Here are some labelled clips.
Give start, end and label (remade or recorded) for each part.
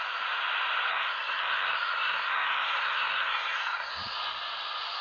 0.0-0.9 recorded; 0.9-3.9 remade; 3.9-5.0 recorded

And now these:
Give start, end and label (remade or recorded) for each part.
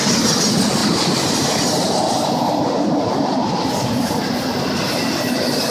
0.0-0.8 recorded; 0.8-4.2 remade; 4.2-5.7 recorded